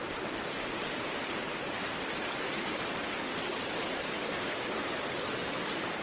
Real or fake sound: fake